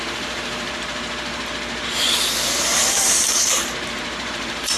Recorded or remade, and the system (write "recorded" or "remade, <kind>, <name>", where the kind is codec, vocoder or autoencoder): remade, vocoder, BigVGAN v2